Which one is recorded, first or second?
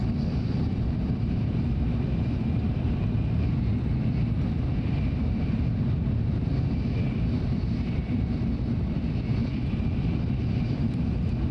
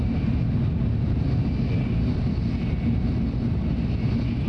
second